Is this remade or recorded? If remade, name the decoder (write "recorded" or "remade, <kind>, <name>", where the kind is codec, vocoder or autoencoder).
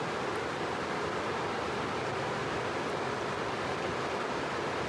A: recorded